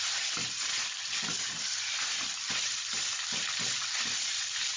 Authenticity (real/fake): real